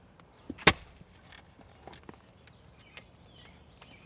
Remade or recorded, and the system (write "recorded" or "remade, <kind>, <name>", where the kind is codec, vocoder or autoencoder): recorded